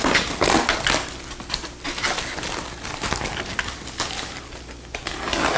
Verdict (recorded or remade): recorded